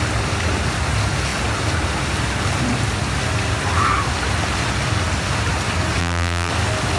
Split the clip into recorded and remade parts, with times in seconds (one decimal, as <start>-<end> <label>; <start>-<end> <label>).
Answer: 0.0-6.0 recorded; 6.0-6.5 remade; 6.5-7.0 recorded